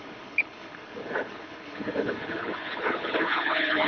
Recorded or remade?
remade